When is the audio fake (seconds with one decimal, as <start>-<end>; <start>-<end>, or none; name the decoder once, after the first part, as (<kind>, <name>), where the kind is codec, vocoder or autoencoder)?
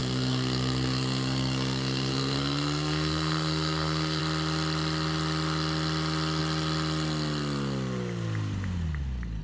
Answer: 0.0-4.2 (codec, SNAC)